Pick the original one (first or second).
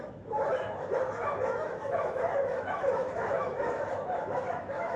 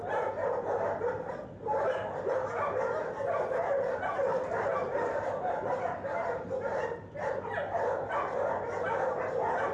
second